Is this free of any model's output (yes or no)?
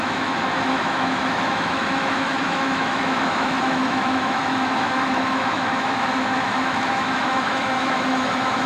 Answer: no